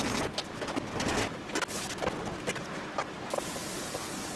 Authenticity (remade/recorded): recorded